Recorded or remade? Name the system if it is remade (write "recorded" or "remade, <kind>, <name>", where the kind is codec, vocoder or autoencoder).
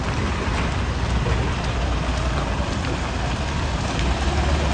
recorded